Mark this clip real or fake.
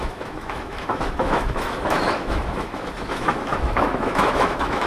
fake